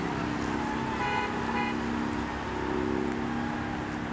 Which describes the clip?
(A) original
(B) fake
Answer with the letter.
A